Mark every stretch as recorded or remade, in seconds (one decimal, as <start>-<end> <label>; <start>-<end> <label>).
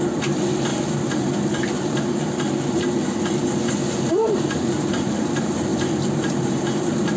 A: 0.0-0.7 remade; 0.7-4.1 recorded; 4.1-7.2 remade